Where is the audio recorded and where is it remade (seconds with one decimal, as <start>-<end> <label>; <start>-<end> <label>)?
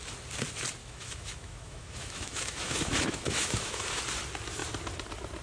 0.0-0.8 recorded; 0.8-4.0 remade; 4.0-5.4 recorded